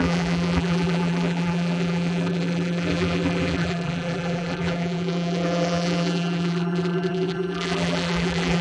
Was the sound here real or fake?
fake